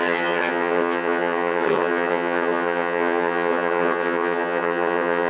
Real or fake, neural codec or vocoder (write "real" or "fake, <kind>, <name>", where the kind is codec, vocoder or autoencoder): fake, vocoder, HiFi-GAN